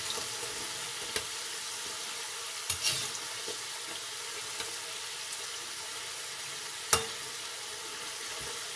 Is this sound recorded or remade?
recorded